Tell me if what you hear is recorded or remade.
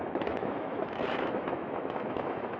remade